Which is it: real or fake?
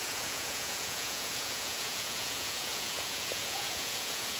fake